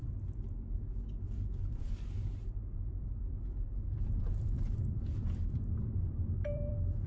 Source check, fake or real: fake